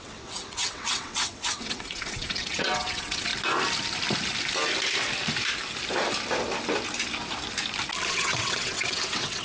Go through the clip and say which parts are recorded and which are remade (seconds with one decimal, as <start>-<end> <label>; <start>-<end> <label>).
0.0-3.3 remade; 3.3-8.1 recorded; 8.1-9.4 remade